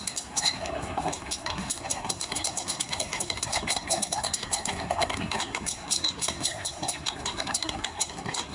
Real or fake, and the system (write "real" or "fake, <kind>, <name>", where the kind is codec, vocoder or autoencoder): fake, codec, SNAC